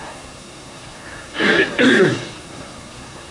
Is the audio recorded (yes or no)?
no